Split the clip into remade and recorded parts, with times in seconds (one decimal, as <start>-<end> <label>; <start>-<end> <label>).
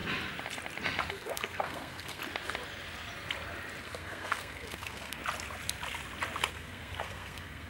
0.0-1.1 recorded; 1.1-2.2 remade; 2.2-3.8 recorded; 3.8-5.2 remade; 5.2-6.5 recorded; 6.5-7.7 remade